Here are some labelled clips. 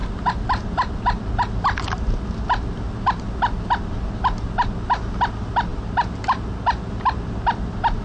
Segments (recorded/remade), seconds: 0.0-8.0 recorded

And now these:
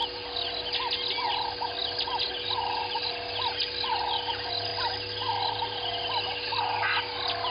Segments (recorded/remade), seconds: 0.0-7.5 recorded

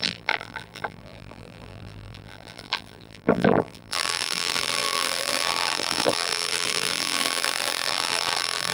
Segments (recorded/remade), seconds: 0.0-8.7 remade

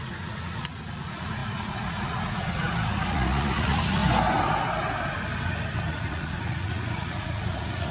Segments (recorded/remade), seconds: 0.0-4.0 remade; 4.0-5.9 recorded; 5.9-7.9 remade

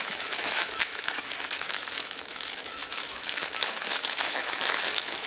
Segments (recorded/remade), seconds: 0.0-5.3 remade

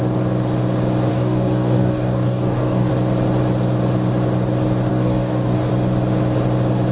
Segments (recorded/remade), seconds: 0.0-1.1 recorded; 1.1-2.9 remade; 2.9-4.9 recorded; 4.9-5.7 remade; 5.7-6.9 recorded

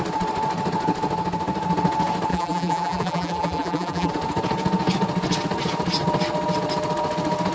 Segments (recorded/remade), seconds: 0.0-2.3 recorded; 2.3-4.1 remade; 4.1-7.5 recorded